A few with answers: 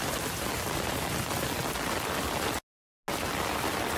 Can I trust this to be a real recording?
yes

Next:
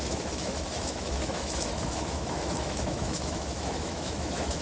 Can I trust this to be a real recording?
no